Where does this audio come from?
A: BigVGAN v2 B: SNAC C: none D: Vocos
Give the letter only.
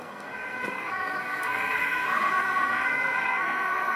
B